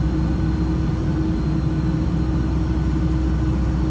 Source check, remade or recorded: recorded